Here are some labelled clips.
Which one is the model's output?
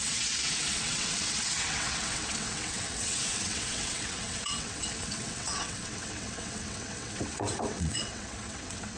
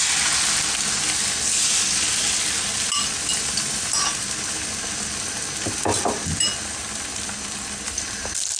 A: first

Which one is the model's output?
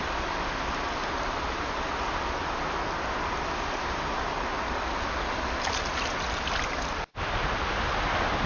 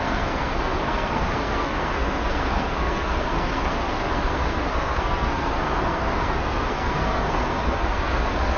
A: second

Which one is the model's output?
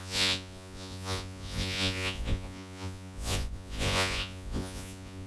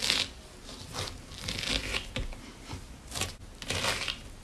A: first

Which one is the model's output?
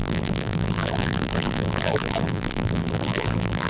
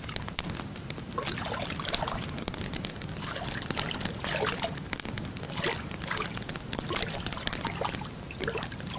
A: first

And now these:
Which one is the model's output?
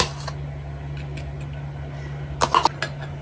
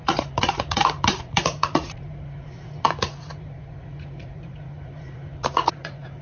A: second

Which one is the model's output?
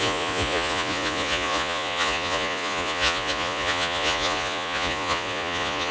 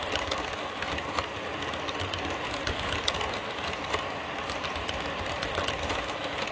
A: first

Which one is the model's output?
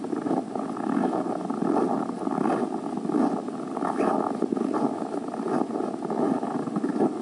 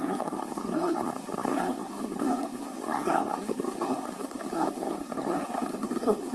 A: second